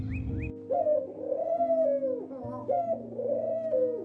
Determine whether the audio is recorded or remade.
recorded